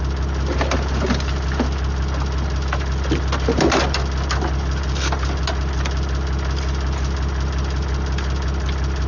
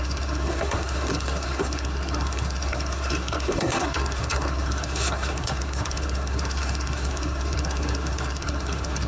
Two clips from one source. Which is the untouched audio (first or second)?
first